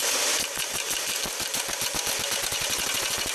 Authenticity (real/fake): real